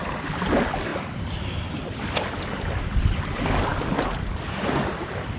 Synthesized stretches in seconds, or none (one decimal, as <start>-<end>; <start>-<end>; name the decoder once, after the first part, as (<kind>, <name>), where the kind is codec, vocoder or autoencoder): 0.9-3.3 (vocoder, BigVGAN v2); 3.7-5.0